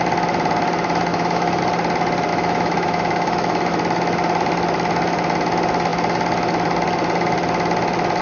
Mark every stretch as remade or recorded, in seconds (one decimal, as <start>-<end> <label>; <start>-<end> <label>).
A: 0.0-1.1 recorded; 1.1-1.6 remade; 1.6-2.3 recorded; 2.3-3.7 remade; 3.7-8.2 recorded